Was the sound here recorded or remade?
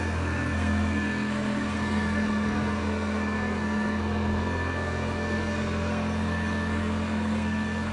remade